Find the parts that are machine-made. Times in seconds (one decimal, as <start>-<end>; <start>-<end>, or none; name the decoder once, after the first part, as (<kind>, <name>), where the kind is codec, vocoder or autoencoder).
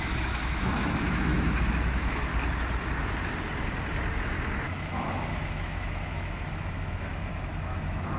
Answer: 0.0-2.3 (autoencoder, DAC-VAE); 4.6-8.2